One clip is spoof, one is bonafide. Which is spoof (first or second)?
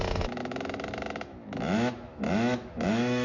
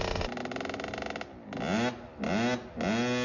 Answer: first